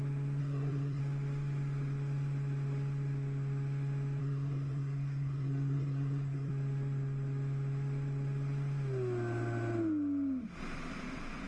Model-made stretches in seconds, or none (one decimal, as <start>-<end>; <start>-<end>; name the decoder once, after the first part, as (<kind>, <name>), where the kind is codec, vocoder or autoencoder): 0.4-1.0 (codec, SNAC); 4.2-6.5